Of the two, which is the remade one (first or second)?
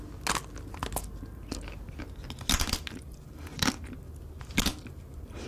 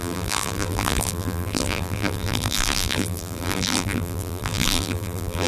second